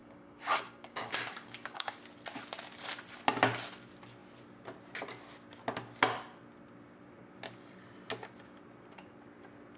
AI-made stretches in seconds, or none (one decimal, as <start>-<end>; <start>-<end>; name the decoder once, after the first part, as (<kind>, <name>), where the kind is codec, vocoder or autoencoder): 0.0-2.0 (codec, DAC)